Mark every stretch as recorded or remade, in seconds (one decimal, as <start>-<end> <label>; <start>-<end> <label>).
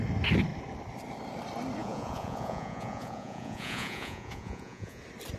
0.0-1.8 recorded; 1.8-5.0 remade; 5.0-5.4 recorded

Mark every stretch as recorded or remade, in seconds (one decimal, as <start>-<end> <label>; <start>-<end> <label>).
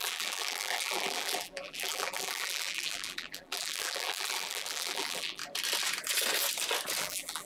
0.0-5.4 remade; 5.4-7.0 recorded; 7.0-7.4 remade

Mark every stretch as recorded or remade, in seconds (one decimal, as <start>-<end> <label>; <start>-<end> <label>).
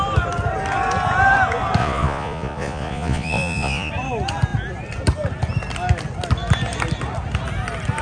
0.0-1.8 recorded; 1.8-3.9 remade; 3.9-8.0 recorded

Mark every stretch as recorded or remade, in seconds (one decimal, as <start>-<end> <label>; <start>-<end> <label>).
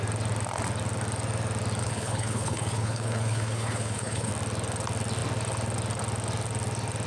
0.0-1.8 recorded; 1.8-4.3 remade; 4.3-7.1 recorded